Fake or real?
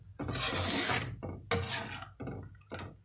real